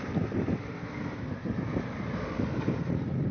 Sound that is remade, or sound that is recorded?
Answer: recorded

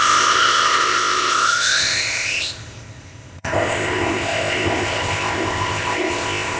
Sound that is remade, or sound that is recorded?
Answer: remade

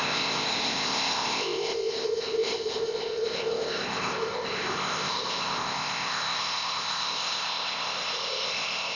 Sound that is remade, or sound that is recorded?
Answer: remade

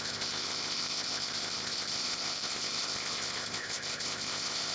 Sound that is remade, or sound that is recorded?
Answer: remade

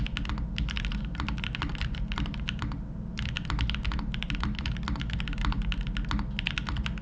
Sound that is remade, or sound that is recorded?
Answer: recorded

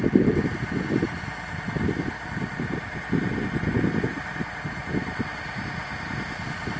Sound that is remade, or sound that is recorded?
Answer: recorded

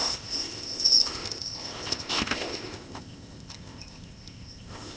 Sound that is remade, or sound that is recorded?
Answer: remade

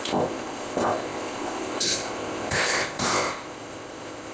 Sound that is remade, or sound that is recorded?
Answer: remade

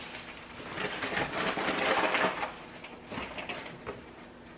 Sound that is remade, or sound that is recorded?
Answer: recorded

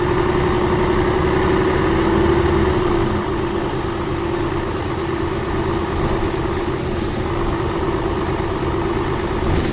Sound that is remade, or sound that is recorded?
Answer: recorded